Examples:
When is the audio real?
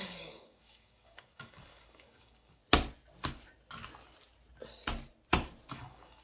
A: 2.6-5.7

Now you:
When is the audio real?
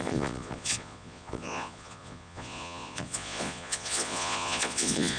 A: none